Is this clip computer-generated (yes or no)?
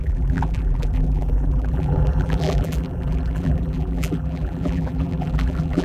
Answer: yes